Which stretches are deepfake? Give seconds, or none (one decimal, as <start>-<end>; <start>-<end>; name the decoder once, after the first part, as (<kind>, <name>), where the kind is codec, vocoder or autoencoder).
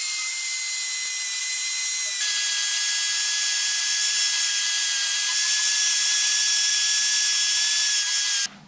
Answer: 0.0-0.5 (vocoder, BigVGAN v2); 1.4-1.8; 3.8-6.7